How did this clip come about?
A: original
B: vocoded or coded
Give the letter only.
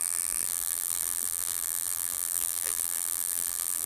B